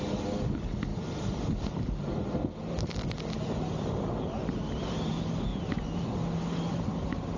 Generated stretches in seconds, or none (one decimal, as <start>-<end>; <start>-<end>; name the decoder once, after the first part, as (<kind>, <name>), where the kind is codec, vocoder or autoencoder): 0.9-3.9 (vocoder, BigVGAN v2); 5.5-6.2

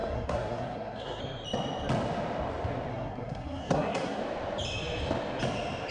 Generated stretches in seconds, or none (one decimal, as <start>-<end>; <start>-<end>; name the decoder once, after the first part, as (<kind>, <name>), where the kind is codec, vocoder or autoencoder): 0.0-1.2 (codec, SNAC); 2.9-4.2